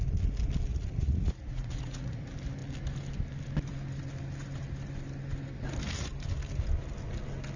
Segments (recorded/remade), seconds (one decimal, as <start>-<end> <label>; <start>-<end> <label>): 0.0-0.7 recorded; 0.7-2.2 remade; 2.2-7.6 recorded